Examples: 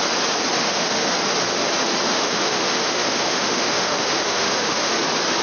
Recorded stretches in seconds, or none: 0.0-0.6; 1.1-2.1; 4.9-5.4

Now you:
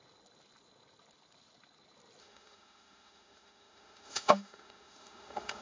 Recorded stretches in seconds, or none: 0.0-2.2

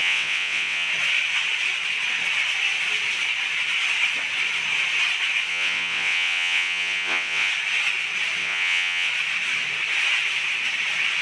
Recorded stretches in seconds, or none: 0.9-5.5; 7.5-8.4; 9.1-11.2

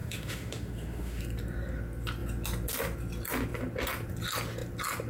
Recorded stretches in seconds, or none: 1.2-5.1

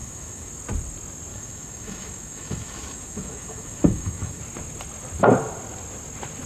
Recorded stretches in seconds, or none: 0.5-1.3; 4.4-6.5

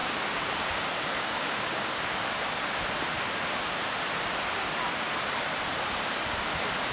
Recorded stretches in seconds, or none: 2.8-6.9

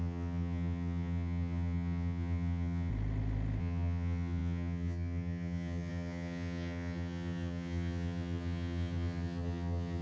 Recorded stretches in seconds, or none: 2.9-3.6

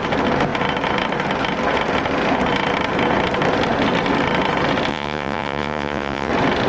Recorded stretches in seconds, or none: 0.0-4.9; 6.3-6.7